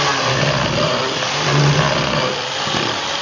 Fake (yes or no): yes